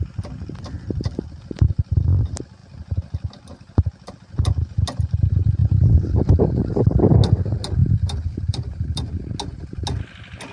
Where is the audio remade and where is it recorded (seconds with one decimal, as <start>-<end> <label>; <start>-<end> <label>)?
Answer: 0.0-7.8 recorded; 7.8-9.2 remade; 9.2-10.5 recorded